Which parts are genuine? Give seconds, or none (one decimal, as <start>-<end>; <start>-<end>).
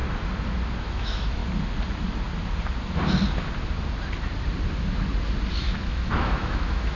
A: 0.0-0.8; 1.4-5.6